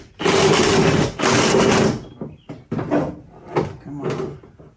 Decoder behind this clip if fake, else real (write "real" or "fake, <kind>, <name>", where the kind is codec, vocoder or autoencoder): real